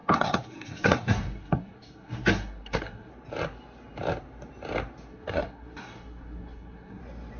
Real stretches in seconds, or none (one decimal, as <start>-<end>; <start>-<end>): 3.1-5.1; 7.0-7.4